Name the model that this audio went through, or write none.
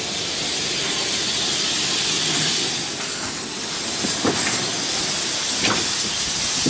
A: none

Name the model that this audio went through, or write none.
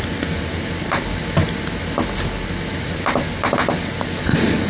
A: none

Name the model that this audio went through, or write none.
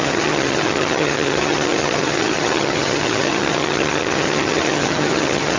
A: vocoder, HiFi-GAN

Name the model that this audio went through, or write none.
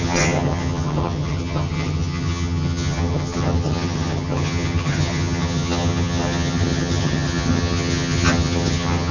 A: vocoder, HiFi-GAN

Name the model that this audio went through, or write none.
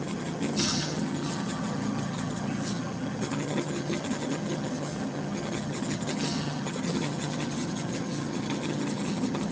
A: vocoder, HiFi-GAN